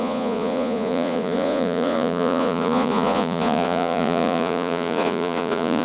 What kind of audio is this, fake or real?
fake